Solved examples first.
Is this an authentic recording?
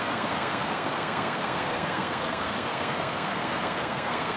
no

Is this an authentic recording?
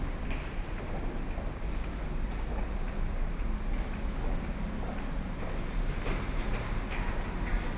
yes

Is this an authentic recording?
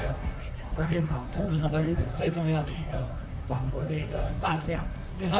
no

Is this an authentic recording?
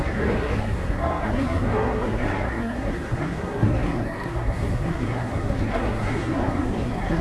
no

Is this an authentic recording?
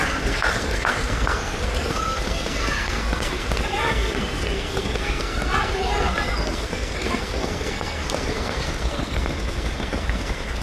no